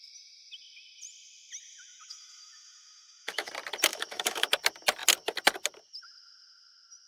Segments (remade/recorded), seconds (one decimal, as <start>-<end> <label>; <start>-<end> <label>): 0.0-1.7 recorded; 1.7-3.5 remade; 3.5-3.9 recorded; 3.9-4.5 remade; 4.5-7.1 recorded